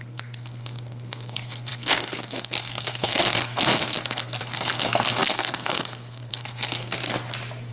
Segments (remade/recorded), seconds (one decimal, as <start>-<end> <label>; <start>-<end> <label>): 0.0-7.0 remade; 7.0-7.7 recorded

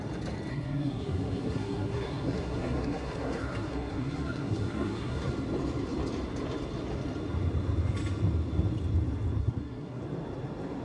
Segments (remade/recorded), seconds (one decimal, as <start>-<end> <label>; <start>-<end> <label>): 0.0-0.5 recorded; 0.5-5.3 remade; 5.3-9.4 recorded; 9.4-10.0 remade; 10.0-10.8 recorded

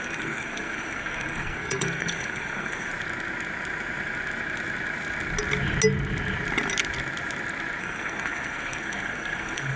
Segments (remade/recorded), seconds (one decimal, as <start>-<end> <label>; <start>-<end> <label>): 0.0-2.9 remade; 2.9-7.8 recorded; 7.8-9.8 remade

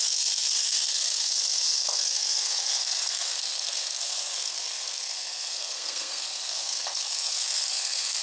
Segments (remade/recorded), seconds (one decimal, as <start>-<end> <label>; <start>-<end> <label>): 0.0-8.2 remade